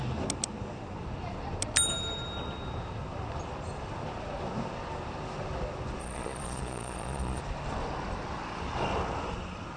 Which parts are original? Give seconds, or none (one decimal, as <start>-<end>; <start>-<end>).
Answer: 0.0-6.0; 7.4-9.8